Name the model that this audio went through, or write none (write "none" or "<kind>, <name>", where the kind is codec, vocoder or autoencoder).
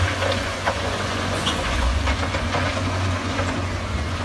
vocoder, Vocos